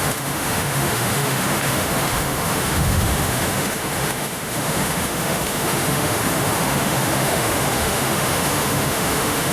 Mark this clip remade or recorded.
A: remade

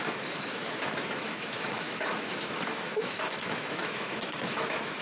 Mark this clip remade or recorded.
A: remade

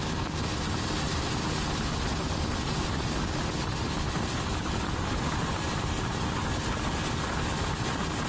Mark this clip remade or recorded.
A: recorded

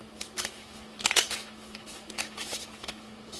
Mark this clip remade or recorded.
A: remade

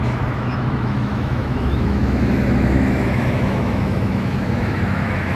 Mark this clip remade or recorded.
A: remade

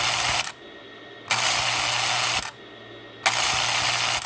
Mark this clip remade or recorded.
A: recorded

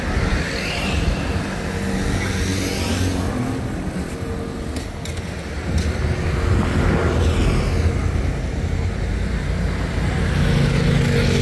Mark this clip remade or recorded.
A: recorded